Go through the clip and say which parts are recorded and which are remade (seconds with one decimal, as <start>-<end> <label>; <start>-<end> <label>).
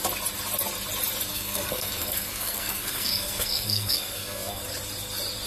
0.0-1.3 recorded; 1.3-4.6 remade; 4.6-5.5 recorded